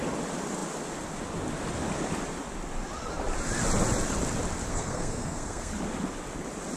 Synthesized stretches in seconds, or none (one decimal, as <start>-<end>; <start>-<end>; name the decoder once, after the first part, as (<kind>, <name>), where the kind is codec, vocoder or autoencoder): 4.7-5.7 (codec, SNAC)